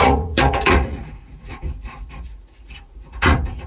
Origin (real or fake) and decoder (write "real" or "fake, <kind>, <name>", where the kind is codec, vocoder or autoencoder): fake, vocoder, Vocos